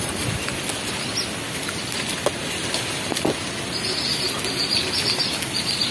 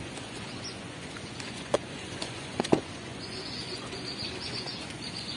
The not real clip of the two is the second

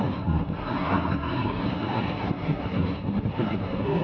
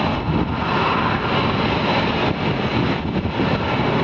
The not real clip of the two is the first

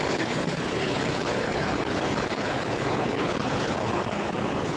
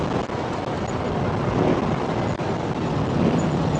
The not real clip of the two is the first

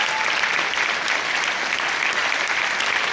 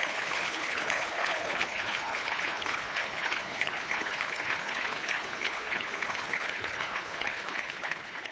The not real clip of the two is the second